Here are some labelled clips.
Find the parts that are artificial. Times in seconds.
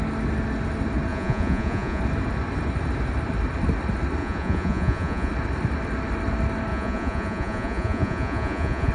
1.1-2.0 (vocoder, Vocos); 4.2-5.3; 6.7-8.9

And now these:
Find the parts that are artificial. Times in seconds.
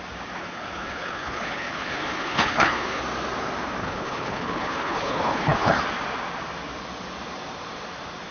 0.4-3.0 (codec, HILCodec); 3.8-5.8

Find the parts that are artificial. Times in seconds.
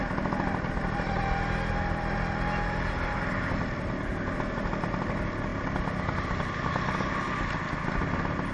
none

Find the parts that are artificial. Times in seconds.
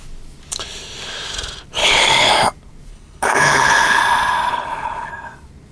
1.8-2.3 (codec, HILCodec); 2.9-4.0; 4.5-5.1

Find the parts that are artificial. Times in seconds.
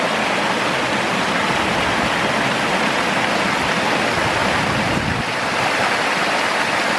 4.4-5.6 (vocoder, BigVGAN v2)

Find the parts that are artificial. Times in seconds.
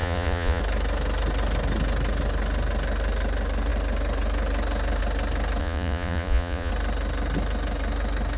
0.0-0.6 (vocoder, Vocos); 5.6-6.7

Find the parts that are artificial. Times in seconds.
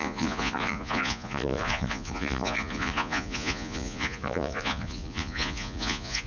0.0-6.3 (vocoder, Vocos)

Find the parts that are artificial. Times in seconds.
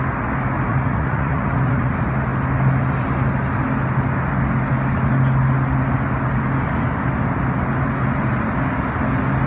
0.7-1.9 (vocoder, Vocos)